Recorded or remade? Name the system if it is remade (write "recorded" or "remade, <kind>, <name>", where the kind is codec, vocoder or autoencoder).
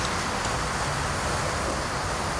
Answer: recorded